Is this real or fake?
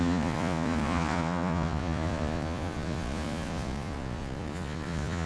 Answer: fake